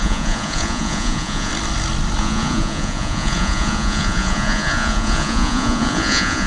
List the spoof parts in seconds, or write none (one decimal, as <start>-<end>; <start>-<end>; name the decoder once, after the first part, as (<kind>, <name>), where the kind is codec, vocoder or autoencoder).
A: 0.0-1.5 (vocoder, Vocos); 2.2-6.5